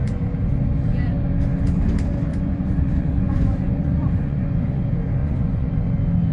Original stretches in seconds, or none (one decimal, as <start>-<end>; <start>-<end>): 0.0-2.3; 4.8-5.2; 5.7-6.3

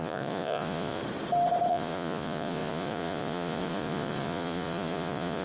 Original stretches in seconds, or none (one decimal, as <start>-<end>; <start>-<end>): 1.0-1.7

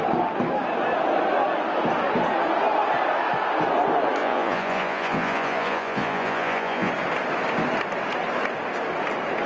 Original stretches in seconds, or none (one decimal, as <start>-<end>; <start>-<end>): 0.0-4.2; 6.9-9.5

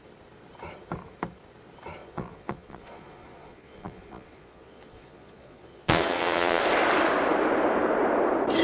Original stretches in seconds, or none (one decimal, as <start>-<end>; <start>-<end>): 0.0-2.0; 6.6-8.6

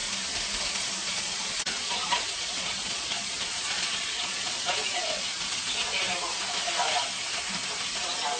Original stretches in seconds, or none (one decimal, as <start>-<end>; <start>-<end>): 0.0-1.1; 6.0-8.4

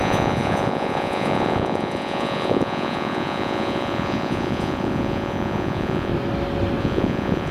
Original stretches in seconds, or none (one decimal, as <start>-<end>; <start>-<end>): 6.1-6.8